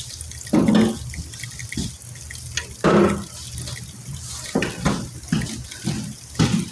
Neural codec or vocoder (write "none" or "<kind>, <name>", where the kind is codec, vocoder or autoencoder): none